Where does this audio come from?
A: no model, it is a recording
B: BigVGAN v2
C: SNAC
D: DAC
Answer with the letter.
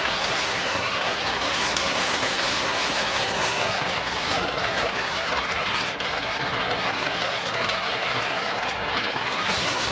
C